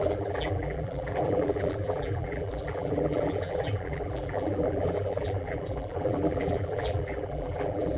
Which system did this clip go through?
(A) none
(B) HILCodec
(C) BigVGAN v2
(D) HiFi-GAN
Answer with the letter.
C